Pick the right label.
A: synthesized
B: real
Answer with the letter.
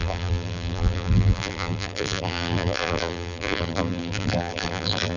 A